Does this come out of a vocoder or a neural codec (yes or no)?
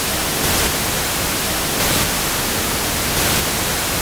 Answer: no